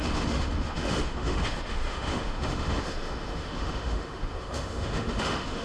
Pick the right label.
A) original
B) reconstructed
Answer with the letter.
B